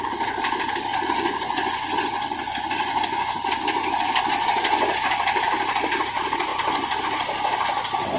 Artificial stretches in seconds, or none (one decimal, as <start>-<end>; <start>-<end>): 0.9-5.0; 6.5-7.0